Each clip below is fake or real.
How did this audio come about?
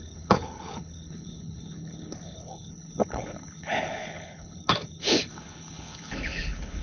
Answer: fake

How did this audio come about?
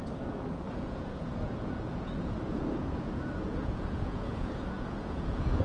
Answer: fake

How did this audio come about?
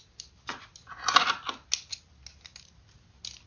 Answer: real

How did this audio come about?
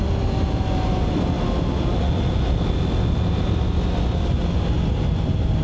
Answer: real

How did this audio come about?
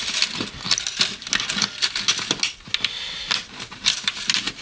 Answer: real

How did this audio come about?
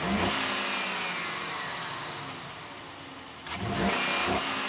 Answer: real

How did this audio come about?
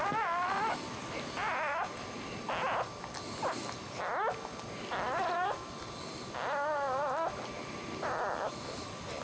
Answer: real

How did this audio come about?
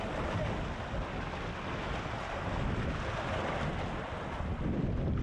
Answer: real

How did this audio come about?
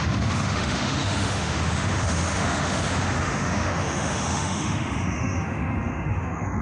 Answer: fake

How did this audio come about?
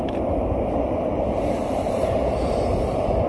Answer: real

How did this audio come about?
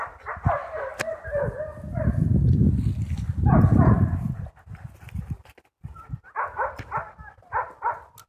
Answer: real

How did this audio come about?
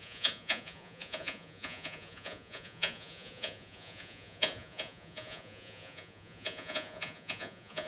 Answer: fake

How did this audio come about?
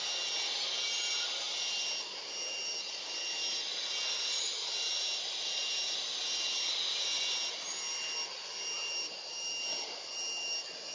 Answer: real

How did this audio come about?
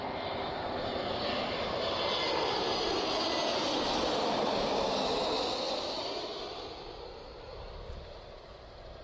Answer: real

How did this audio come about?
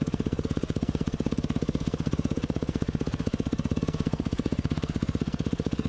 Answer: fake